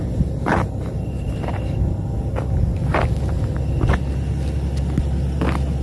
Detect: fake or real real